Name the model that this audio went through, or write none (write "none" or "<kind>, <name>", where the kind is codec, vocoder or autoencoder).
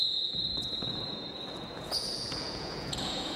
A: vocoder, Vocos